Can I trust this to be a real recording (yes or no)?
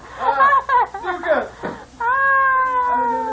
yes